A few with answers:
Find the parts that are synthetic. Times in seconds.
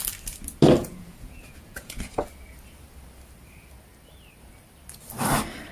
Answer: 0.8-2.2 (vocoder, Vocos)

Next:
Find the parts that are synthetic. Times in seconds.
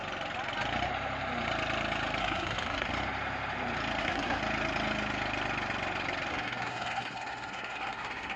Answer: 2.2-2.9 (codec, SNAC); 4.0-4.4; 6.3-8.4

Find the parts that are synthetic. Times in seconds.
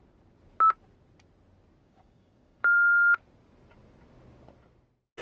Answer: 1.8-3.2 (codec, DAC)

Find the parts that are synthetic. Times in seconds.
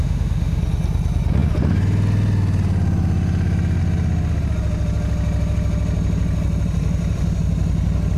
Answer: 0.0-0.6 (autoencoder, DAC-VAE)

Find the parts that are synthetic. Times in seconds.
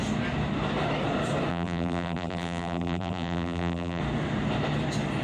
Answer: 1.5-4.0 (vocoder, BigVGAN v2)